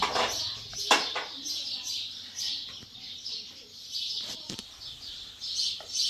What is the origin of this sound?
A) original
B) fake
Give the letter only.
A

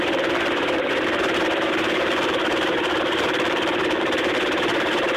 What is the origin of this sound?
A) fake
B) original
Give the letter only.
A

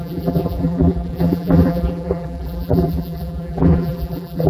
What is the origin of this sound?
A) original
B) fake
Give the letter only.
B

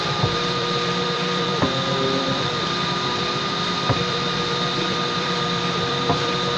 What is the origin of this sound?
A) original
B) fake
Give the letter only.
B